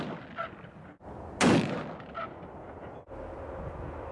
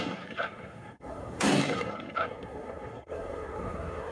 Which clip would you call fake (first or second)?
second